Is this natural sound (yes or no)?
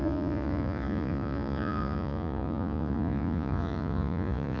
no